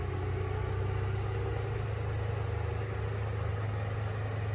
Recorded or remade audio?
recorded